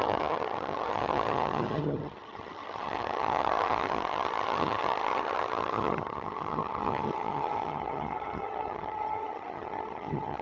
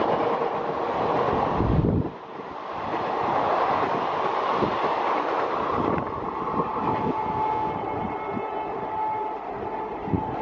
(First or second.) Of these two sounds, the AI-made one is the first